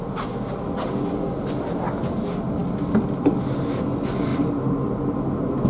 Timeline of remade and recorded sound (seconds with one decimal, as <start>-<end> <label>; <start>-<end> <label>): 0.0-5.7 recorded